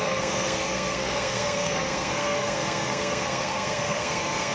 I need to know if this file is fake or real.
fake